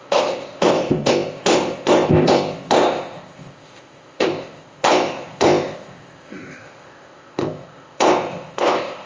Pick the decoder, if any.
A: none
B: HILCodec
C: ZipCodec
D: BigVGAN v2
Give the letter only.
C